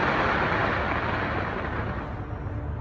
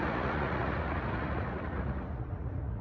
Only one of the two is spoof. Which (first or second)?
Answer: second